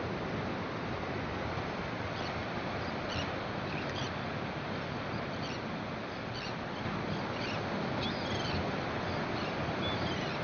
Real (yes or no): yes